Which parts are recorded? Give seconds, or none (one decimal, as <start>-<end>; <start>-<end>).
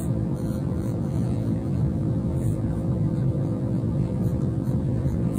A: none